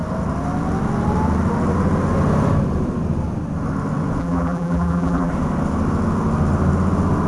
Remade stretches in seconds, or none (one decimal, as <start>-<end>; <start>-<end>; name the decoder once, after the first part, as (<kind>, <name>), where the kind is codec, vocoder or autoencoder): 4.2-5.3 (vocoder, BigVGAN v2)